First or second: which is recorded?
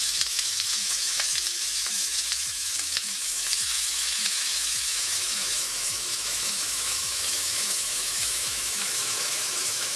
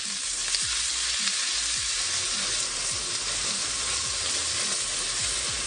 second